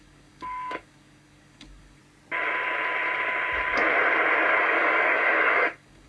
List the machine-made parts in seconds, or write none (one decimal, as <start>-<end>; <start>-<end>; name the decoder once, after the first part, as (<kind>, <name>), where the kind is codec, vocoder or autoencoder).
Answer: 0.0-2.0 (codec, DAC); 4.6-6.1